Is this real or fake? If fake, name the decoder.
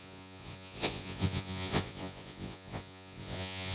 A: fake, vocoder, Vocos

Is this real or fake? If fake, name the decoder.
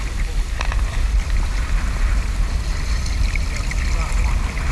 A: real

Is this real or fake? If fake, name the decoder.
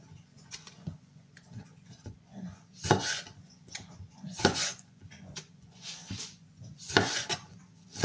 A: fake, vocoder, Vocos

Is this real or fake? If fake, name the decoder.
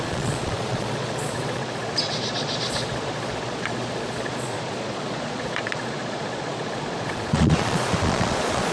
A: fake, vocoder, Vocos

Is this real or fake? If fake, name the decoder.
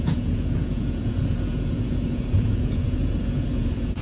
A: fake, vocoder, Vocos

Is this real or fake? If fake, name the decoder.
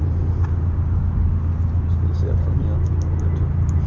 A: real